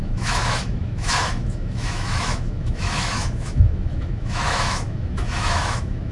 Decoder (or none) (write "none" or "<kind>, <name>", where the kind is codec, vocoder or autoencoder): autoencoder, DAC-VAE